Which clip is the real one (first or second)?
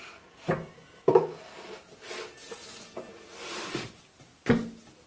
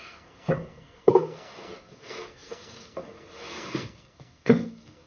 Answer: first